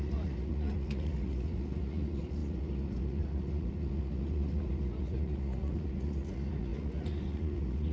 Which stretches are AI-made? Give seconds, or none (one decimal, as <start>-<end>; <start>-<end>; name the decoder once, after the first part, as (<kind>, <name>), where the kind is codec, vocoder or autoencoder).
0.0-7.9 (vocoder, Vocos)